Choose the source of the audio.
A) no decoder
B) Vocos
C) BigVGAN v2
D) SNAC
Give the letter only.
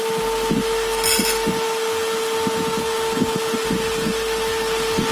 A